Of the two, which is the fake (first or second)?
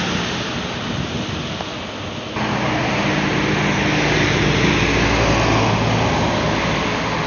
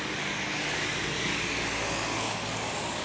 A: second